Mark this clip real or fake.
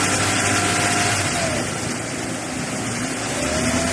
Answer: real